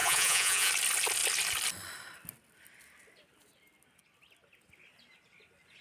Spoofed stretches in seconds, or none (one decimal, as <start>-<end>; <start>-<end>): 0.0-0.7